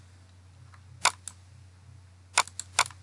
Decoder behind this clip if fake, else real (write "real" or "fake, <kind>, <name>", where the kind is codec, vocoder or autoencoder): real